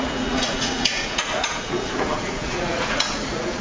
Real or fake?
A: fake